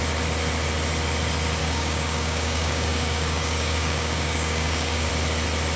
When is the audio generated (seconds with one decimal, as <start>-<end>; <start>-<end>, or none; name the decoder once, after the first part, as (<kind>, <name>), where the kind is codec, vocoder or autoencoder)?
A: 1.6-5.1 (codec, DAC)